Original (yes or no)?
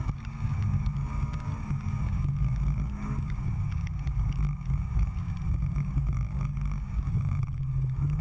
no